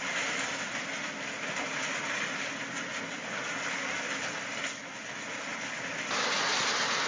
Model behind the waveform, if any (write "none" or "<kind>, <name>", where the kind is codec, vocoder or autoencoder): none